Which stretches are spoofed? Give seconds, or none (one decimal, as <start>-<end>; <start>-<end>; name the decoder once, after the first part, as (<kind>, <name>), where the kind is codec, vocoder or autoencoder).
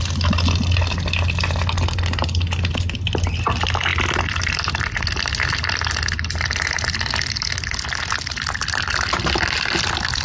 none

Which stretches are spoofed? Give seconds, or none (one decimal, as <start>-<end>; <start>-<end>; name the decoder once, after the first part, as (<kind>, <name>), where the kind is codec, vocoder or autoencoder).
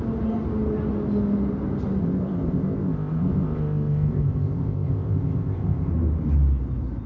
2.0-5.9 (codec, ZipCodec)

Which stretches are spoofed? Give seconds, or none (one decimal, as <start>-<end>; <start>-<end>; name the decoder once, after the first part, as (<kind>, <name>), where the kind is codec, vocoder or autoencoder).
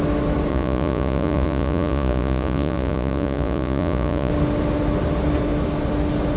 0.5-4.3 (vocoder, Vocos)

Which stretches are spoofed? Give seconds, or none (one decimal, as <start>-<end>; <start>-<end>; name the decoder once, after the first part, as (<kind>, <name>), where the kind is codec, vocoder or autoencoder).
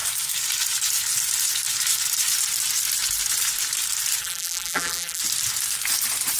4.2-5.2 (vocoder, BigVGAN v2)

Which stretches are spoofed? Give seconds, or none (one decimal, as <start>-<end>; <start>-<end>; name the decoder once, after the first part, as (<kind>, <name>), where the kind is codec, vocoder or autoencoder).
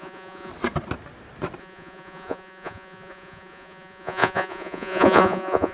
0.0-0.5 (vocoder, Vocos); 1.6-5.7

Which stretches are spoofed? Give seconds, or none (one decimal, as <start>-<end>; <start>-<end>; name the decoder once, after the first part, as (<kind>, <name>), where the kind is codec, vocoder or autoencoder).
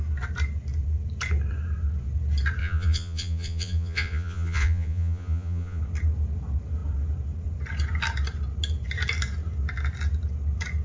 2.6-5.8 (vocoder, Vocos)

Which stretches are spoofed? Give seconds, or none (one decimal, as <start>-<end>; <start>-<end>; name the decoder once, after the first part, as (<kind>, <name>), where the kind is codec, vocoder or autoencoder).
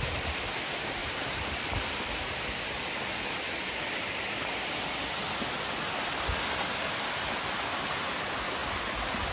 1.0-1.7 (vocoder, BigVGAN v2)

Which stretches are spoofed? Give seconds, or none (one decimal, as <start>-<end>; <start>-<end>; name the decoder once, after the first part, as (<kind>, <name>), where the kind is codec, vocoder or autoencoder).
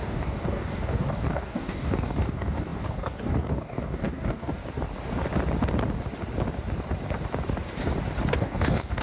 0.0-4.6 (codec, DAC); 8.3-9.0